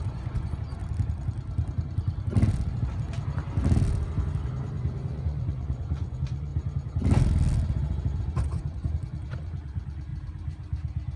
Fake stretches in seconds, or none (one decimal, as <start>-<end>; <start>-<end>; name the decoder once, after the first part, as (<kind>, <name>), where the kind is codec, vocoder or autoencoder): 0.0-0.8 (vocoder, Vocos); 5.1-6.5; 8.2-10.1